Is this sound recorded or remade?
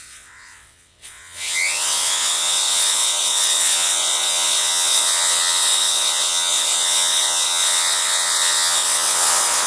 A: remade